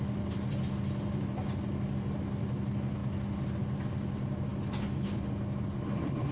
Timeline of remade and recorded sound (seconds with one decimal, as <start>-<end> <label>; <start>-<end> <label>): 0.0-6.3 recorded